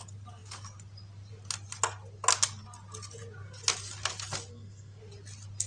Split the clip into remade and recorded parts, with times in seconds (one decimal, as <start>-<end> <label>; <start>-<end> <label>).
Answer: 0.0-4.5 recorded; 4.5-5.0 remade; 5.0-5.7 recorded